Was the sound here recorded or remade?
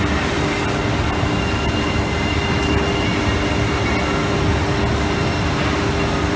recorded